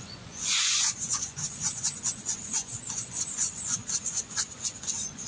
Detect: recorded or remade remade